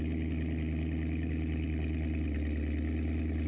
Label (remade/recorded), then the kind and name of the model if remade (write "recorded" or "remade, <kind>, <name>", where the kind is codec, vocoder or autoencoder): recorded